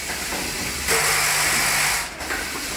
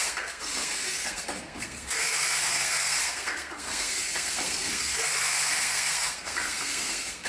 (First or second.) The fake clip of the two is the second